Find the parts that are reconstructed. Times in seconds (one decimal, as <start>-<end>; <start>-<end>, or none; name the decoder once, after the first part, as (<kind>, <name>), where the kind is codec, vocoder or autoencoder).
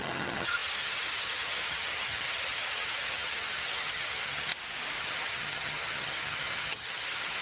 0.0-4.5 (vocoder, HiFi-GAN); 5.0-7.4